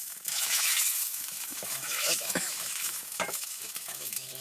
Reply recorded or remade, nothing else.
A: remade